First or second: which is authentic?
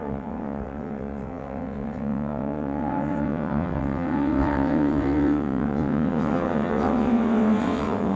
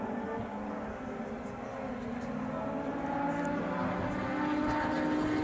second